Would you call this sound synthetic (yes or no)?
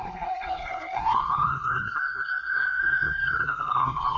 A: yes